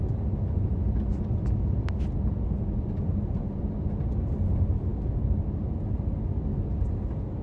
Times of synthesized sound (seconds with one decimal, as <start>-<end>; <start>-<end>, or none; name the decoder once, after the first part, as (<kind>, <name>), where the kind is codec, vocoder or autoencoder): none